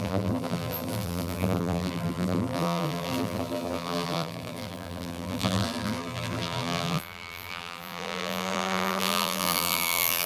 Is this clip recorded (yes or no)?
no